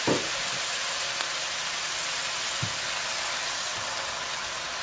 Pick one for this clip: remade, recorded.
recorded